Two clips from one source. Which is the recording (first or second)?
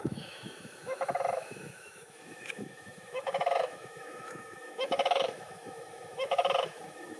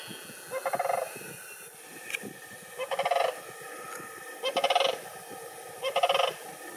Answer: second